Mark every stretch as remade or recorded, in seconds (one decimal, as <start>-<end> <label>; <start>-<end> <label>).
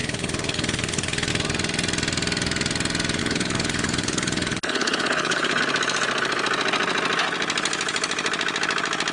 0.0-1.3 remade; 1.3-3.2 recorded; 3.2-5.6 remade; 5.6-9.1 recorded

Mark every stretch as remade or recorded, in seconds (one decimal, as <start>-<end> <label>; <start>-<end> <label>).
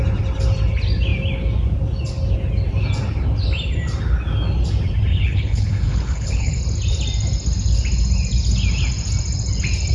0.0-5.1 recorded; 5.1-6.6 remade; 6.6-9.9 recorded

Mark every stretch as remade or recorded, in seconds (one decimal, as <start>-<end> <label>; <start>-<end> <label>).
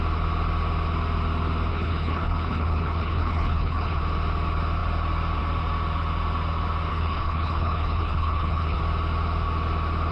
0.0-1.7 recorded; 1.7-4.0 remade; 4.0-6.9 recorded; 6.9-8.8 remade; 8.8-10.1 recorded